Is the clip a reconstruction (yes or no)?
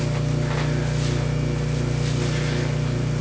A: no